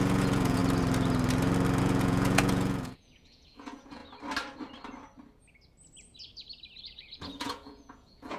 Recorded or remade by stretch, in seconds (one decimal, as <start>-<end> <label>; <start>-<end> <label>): 0.0-0.6 remade; 0.6-1.8 recorded; 1.8-4.0 remade; 4.0-6.8 recorded; 6.8-8.4 remade